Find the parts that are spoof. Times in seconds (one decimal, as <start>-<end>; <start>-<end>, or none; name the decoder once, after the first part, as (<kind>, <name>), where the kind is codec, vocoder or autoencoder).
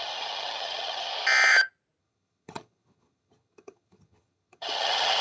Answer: 0.0-1.1 (vocoder, HiFi-GAN); 2.0-5.2